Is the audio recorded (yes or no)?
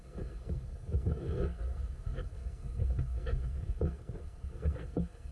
no